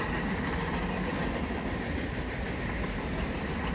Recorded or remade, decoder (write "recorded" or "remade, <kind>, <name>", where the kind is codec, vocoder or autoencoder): recorded